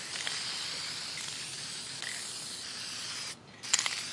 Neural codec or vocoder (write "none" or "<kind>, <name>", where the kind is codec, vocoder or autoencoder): none